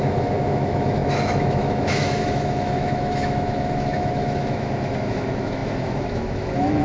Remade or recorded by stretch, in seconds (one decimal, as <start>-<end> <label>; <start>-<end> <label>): 0.0-6.8 remade